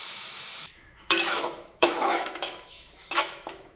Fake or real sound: fake